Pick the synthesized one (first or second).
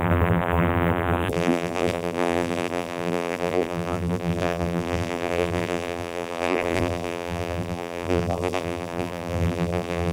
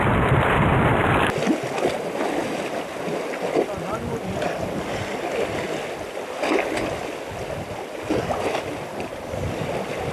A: first